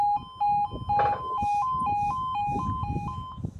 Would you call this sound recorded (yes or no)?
yes